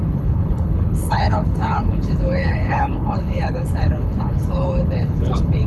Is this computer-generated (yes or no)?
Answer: yes